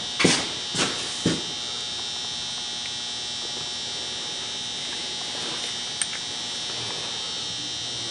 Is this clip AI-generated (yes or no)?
no